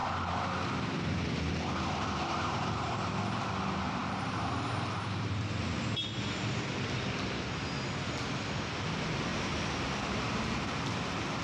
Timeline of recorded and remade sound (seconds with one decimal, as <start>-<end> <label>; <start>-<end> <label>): 0.0-3.1 remade; 3.1-4.0 recorded; 4.0-5.8 remade; 5.8-9.3 recorded; 9.3-10.8 remade; 10.8-11.4 recorded